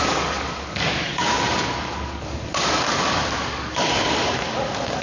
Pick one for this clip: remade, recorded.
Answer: remade